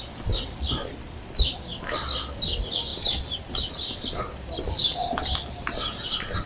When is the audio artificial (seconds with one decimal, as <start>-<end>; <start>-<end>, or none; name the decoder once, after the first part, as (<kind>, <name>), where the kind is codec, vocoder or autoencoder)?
none